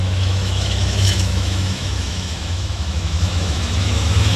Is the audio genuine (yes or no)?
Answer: no